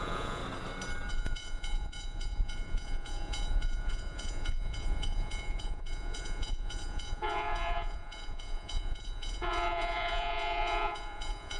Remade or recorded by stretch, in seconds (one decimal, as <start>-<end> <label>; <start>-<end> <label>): 0.0-0.4 remade; 0.4-1.1 recorded; 1.1-11.6 remade